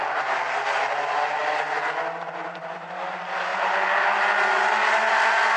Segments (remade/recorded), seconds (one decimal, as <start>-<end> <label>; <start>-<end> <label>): 0.0-3.5 recorded; 3.5-4.2 remade; 4.2-5.6 recorded